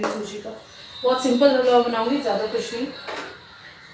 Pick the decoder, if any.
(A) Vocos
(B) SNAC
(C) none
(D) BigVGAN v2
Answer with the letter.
C